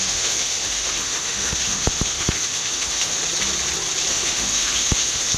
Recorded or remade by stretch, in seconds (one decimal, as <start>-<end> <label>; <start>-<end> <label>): 0.0-3.2 remade; 3.2-4.1 recorded; 4.1-5.4 remade